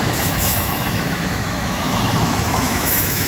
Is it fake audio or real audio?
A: fake